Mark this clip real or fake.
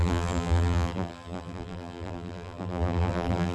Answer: fake